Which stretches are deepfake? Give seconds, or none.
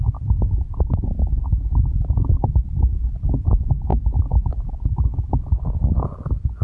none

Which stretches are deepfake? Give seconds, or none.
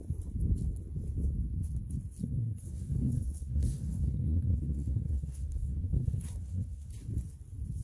2.2-6.9 (codec, SNAC)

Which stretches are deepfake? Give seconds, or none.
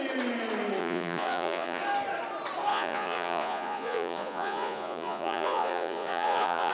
0.8-1.8 (vocoder, Vocos); 2.7-6.7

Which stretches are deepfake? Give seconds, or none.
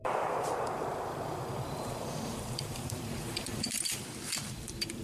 0.0-5.0 (vocoder, BigVGAN v2)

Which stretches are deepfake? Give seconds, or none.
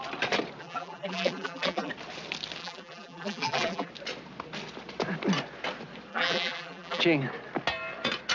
0.6-1.9 (vocoder, BigVGAN v2); 2.6-3.9; 6.1-7.0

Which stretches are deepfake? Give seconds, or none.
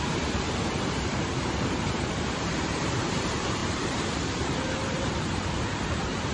0.0-6.3 (vocoder, BigVGAN v2)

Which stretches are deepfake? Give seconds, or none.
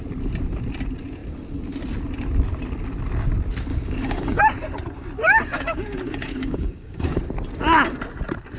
3.7-4.4 (codec, DAC); 5.2-7.2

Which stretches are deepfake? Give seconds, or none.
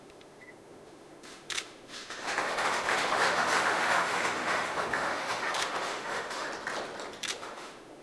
0.0-6.5 (autoencoder, DAC-VAE); 7.3-8.0